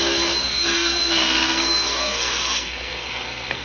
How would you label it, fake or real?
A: fake